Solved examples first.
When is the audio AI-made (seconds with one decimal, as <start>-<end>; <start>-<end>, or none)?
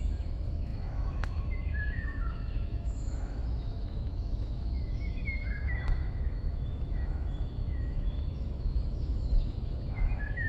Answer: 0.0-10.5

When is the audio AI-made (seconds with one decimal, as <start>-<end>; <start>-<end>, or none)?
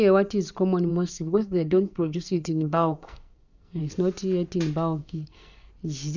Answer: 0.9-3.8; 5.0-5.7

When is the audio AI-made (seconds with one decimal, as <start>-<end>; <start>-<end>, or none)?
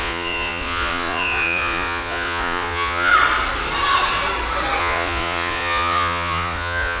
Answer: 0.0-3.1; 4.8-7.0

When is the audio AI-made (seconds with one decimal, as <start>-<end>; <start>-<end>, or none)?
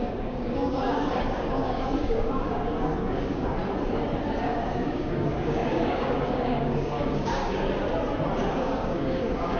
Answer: 0.0-3.6; 4.4-7.4; 8.5-9.6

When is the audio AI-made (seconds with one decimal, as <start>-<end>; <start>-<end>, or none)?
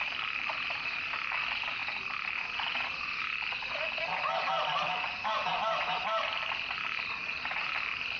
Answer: none